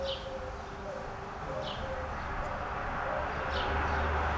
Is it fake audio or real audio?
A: real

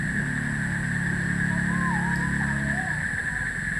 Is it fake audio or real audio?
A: real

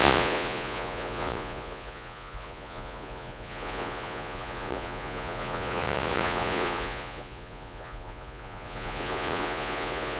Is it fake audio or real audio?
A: fake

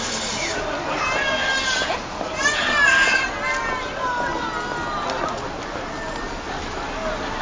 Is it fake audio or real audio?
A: real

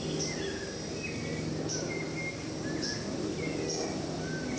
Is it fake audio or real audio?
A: real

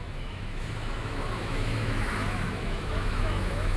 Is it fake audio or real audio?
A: fake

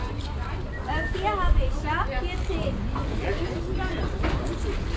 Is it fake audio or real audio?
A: real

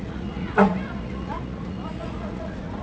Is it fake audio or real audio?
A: fake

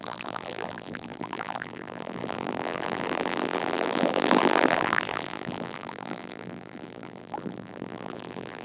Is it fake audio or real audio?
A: fake